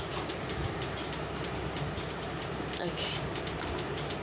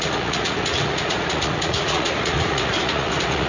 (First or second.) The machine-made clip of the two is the second